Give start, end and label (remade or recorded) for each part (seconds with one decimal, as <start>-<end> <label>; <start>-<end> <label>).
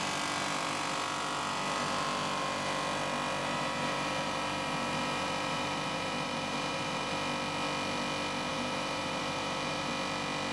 0.0-3.4 recorded; 3.4-7.1 remade; 7.1-8.5 recorded; 8.5-9.9 remade; 9.9-10.5 recorded